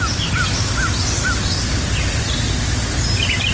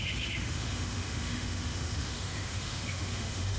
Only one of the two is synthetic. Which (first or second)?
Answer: second